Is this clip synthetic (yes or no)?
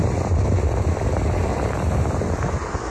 no